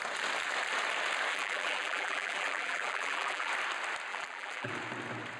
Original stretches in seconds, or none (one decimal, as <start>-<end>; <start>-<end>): 0.0-1.3; 3.5-4.1; 4.7-5.4